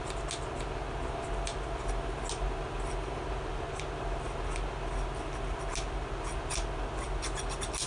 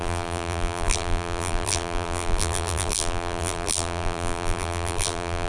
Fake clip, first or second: second